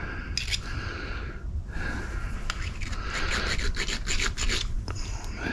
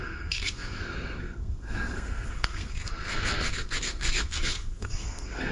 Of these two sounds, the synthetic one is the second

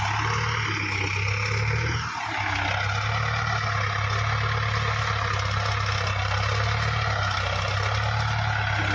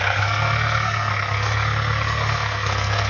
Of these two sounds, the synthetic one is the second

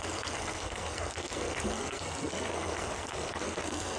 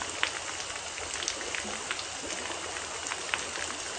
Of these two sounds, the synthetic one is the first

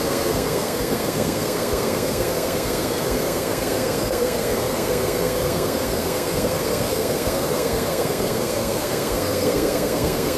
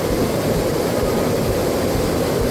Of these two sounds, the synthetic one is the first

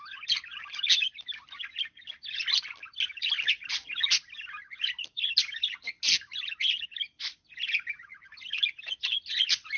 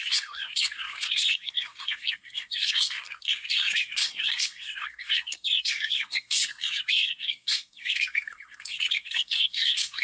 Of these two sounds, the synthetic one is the second